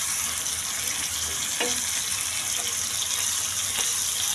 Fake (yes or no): no